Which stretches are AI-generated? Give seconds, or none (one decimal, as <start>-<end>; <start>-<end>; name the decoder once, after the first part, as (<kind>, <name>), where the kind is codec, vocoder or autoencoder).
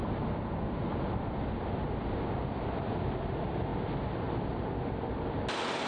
none